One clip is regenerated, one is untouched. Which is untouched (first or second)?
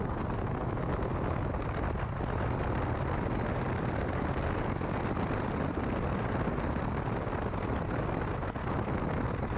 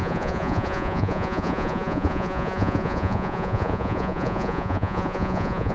first